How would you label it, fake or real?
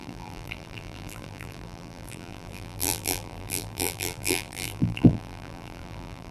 fake